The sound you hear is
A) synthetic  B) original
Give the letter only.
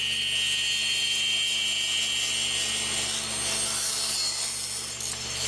B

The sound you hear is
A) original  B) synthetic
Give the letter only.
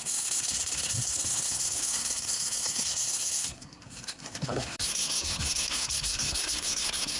B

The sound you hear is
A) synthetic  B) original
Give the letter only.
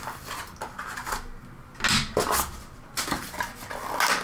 B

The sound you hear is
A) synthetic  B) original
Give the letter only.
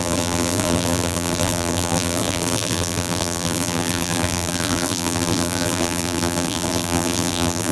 A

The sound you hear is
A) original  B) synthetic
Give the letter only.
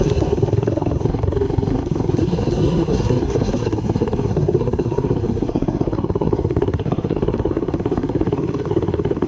B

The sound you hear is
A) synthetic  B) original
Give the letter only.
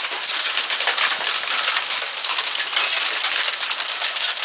B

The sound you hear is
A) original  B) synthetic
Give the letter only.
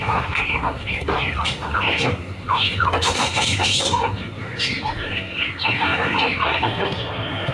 B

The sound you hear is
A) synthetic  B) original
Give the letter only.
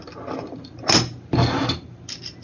B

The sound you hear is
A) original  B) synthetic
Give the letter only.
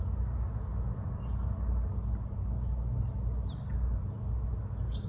A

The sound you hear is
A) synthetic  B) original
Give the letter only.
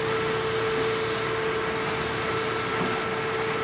B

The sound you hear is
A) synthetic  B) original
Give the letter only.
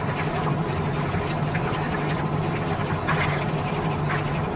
B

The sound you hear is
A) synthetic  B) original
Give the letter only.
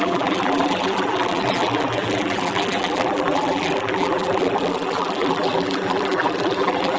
A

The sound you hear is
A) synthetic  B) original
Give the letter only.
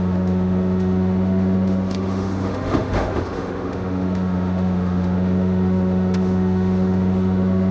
A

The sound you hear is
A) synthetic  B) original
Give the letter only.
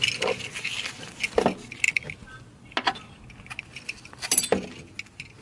B